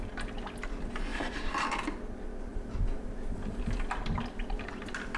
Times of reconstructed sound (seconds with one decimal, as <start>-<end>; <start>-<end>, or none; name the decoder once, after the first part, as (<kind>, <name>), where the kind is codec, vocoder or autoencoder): 1.1-1.7 (vocoder, BigVGAN v2); 2.5-3.6